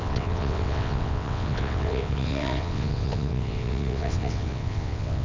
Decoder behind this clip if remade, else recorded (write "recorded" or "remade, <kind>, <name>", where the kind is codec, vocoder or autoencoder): remade, vocoder, WaveNeXt